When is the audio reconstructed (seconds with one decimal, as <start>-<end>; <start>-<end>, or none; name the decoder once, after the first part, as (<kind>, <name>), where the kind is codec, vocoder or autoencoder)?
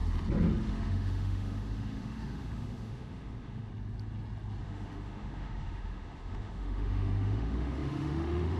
0.7-3.7 (autoencoder, DAC-VAE); 4.6-8.6